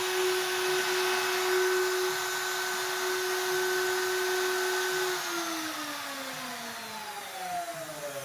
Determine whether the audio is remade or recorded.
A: recorded